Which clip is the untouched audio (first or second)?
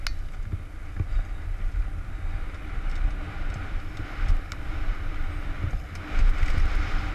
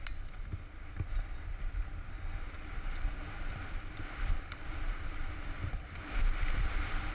first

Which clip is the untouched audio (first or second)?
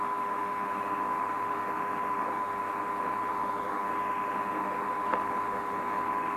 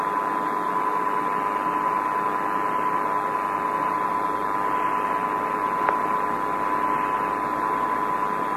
second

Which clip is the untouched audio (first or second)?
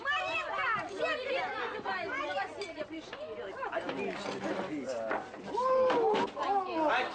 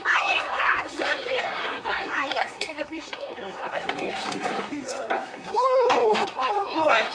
first